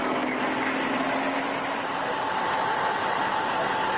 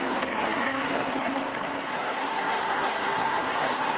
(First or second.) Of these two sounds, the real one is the first